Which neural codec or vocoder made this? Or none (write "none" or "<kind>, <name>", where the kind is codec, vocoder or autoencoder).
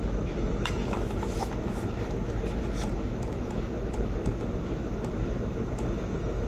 autoencoder, DAC-VAE